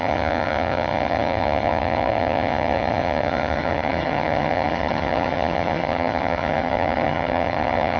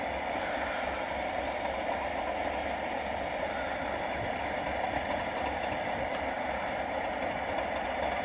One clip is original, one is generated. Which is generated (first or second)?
first